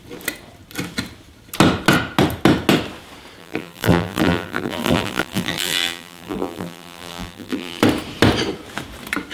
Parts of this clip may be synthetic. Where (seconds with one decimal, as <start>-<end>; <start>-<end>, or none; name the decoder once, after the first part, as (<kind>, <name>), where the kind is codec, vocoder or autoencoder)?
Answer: 3.4-7.8 (vocoder, BigVGAN v2)